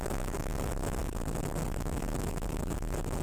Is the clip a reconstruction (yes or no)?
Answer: yes